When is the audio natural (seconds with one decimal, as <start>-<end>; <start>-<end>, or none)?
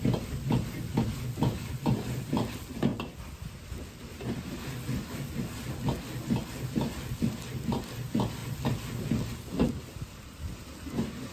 0.0-11.3